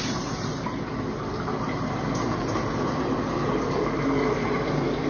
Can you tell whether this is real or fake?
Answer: fake